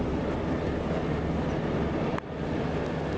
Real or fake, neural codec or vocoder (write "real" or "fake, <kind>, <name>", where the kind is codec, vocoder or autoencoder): real